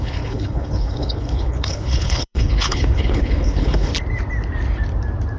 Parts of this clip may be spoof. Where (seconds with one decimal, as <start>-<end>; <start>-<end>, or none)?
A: 0.0-3.9